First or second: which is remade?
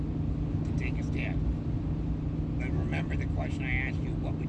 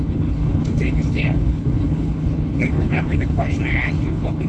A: second